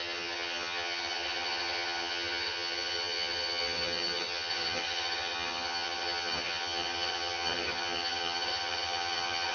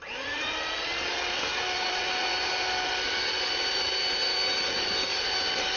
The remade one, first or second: first